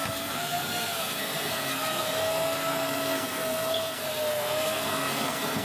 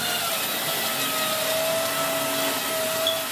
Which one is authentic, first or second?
second